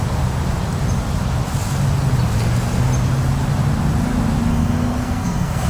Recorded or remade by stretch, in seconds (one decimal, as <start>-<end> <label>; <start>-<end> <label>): 0.0-4.5 recorded; 4.5-5.7 remade